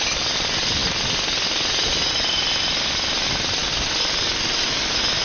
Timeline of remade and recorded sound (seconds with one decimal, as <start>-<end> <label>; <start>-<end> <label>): 0.0-5.2 recorded